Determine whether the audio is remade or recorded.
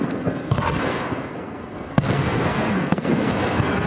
remade